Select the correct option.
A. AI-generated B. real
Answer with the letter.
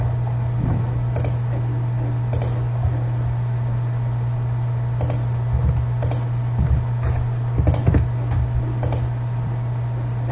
B